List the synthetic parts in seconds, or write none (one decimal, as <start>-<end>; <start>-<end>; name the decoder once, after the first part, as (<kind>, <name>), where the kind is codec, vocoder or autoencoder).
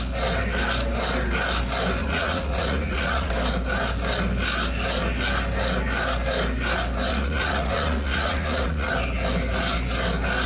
2.0-3.3 (vocoder, Vocos); 7.1-8.9